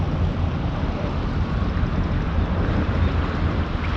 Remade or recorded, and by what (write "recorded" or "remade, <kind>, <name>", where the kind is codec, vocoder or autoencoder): recorded